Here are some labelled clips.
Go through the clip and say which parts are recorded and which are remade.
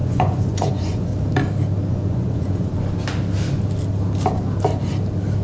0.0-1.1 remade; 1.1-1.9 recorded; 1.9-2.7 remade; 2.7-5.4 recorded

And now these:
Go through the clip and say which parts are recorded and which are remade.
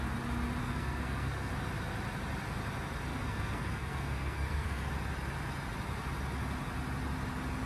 0.0-0.6 recorded; 0.6-1.5 remade; 1.5-3.1 recorded; 3.1-4.9 remade; 4.9-7.7 recorded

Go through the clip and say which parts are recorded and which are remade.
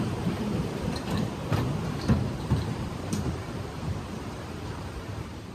0.0-1.4 remade; 1.4-1.9 recorded; 1.9-5.5 remade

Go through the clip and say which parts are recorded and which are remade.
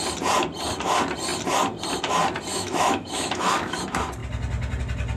0.0-2.5 recorded; 2.5-3.8 remade; 3.8-5.2 recorded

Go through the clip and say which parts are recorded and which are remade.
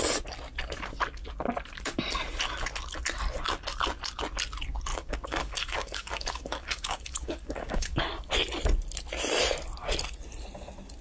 0.0-4.9 recorded; 4.9-8.0 remade; 8.0-11.0 recorded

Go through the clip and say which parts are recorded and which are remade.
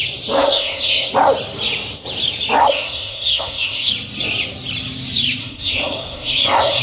0.0-0.4 recorded; 0.4-1.1 remade; 1.1-2.6 recorded; 2.6-3.9 remade; 3.9-5.4 recorded; 5.4-6.8 remade